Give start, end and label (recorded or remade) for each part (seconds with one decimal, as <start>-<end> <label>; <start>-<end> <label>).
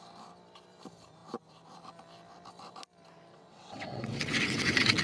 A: 0.0-3.3 recorded; 3.3-5.0 remade